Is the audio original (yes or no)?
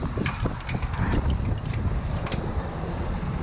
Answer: yes